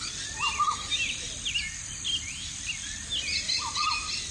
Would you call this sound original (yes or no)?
yes